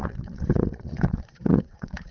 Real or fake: fake